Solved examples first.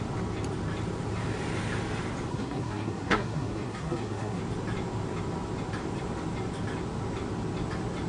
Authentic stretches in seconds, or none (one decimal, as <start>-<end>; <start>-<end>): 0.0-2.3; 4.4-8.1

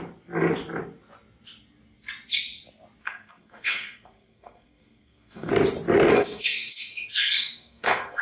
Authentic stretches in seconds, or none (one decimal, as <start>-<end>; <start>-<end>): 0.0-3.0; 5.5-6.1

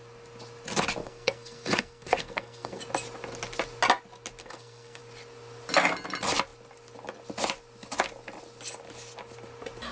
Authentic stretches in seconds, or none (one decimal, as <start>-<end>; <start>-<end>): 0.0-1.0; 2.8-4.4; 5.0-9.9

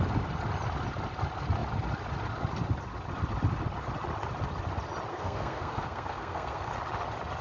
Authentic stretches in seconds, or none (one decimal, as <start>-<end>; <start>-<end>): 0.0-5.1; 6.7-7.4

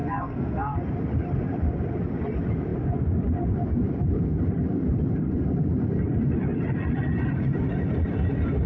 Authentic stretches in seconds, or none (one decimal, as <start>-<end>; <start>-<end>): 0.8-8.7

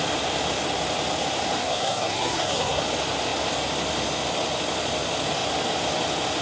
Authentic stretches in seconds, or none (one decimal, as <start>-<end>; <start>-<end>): 0.0-1.6; 2.8-6.4

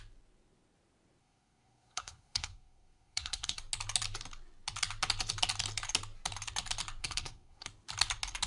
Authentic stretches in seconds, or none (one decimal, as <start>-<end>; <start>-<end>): 0.0-1.2; 3.6-7.0; 7.7-8.5

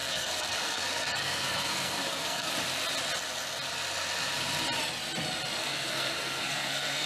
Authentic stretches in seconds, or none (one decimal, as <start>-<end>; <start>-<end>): 2.5-5.6